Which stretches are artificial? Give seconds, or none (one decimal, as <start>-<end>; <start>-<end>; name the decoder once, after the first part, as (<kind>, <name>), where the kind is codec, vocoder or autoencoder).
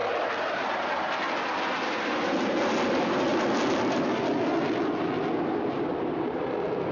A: none